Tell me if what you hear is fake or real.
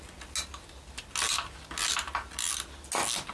real